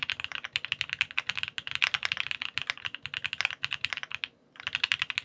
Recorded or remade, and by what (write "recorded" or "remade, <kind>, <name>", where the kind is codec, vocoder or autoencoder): recorded